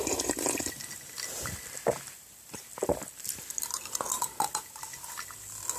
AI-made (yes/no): no